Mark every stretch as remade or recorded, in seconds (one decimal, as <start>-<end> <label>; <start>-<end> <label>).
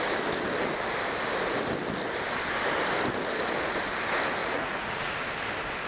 0.0-4.4 recorded; 4.4-5.3 remade; 5.3-5.9 recorded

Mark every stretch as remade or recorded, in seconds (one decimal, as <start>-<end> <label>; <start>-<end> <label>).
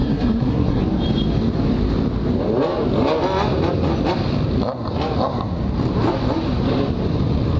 0.0-0.8 remade; 0.8-7.6 recorded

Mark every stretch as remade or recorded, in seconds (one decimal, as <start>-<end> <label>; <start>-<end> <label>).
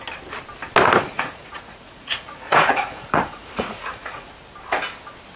0.0-1.1 recorded; 1.1-4.3 remade; 4.3-5.4 recorded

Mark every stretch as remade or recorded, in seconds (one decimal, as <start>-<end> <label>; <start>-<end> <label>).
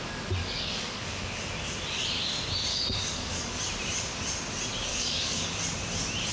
0.0-0.4 recorded; 0.4-1.4 remade; 1.4-2.7 recorded; 2.7-3.6 remade; 3.6-4.9 recorded; 4.9-5.5 remade; 5.5-6.3 recorded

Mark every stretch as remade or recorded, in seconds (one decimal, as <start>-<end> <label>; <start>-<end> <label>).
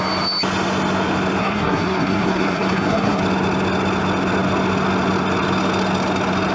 0.0-1.4 recorded; 1.4-3.2 remade; 3.2-6.5 recorded